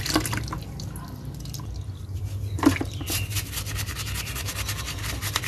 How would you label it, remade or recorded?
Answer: recorded